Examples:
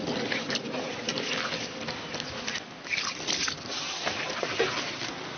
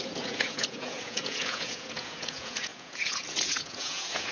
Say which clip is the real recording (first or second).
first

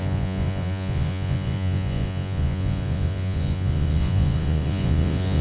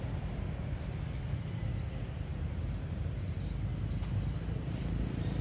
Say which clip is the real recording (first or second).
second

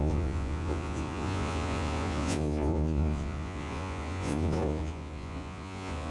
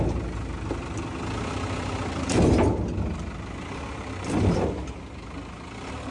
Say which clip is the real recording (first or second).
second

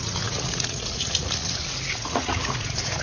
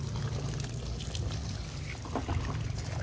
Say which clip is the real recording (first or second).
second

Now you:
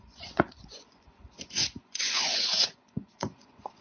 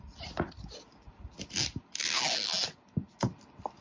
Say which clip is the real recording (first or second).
second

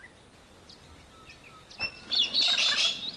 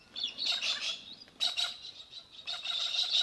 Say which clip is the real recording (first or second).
first